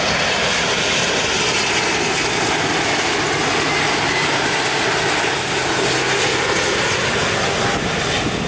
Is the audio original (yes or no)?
yes